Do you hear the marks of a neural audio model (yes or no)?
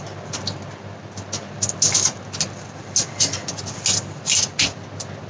no